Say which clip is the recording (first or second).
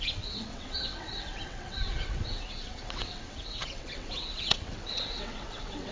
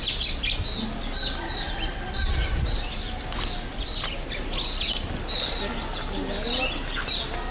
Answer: second